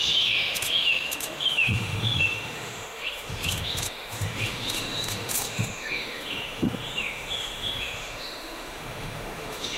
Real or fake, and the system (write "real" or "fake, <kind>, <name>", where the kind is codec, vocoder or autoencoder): fake, autoencoder, DAC-VAE